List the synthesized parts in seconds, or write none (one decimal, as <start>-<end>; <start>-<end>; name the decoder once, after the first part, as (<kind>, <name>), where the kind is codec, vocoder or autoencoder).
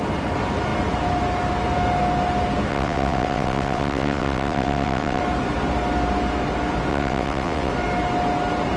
2.7-5.2 (vocoder, WaveNeXt); 6.9-7.7